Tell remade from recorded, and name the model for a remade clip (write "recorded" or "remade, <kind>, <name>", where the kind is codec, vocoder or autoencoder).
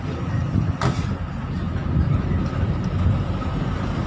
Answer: recorded